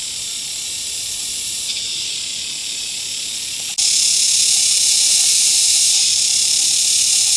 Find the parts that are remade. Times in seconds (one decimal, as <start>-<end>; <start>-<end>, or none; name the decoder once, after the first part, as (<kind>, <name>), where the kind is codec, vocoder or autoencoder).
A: 0.0-2.3 (vocoder, BigVGAN v2); 5.1-7.4